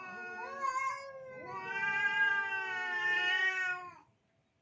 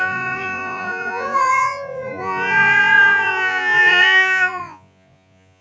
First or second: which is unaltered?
first